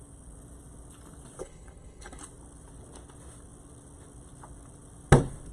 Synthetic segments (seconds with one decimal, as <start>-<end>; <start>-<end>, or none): 1.4-2.2